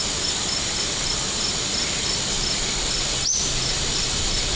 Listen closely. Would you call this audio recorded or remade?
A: recorded